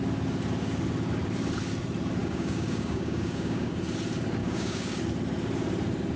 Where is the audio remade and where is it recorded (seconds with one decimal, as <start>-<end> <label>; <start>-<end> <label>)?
0.0-2.2 recorded; 2.2-3.7 remade; 3.7-4.4 recorded; 4.4-5.0 remade; 5.0-6.2 recorded